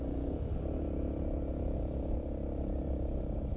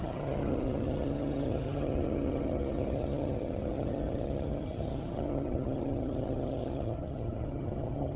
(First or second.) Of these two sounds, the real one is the first